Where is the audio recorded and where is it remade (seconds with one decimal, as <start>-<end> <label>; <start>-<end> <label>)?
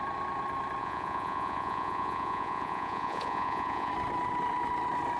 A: 0.0-0.8 recorded; 0.8-3.9 remade; 3.9-5.2 recorded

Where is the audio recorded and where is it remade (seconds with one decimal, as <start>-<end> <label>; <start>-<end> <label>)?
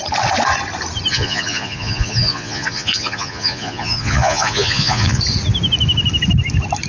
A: 0.0-1.1 recorded; 1.1-5.2 remade; 5.2-6.9 recorded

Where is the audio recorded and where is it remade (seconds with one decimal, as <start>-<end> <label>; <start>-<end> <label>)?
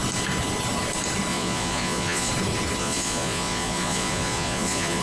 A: 0.0-1.3 recorded; 1.3-2.3 remade; 2.3-2.8 recorded; 2.8-5.0 remade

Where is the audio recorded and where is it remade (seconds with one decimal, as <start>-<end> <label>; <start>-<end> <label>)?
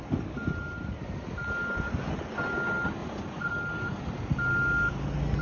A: 0.0-3.0 recorded; 3.0-3.5 remade; 3.5-5.4 recorded